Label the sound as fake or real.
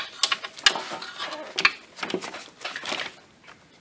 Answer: real